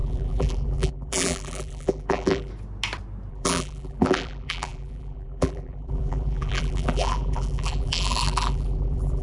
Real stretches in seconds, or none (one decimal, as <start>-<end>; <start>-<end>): 2.5-3.3